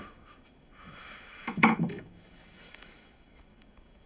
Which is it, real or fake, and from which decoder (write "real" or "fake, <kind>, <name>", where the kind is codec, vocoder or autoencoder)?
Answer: fake, autoencoder, DAC-VAE